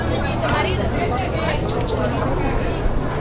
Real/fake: real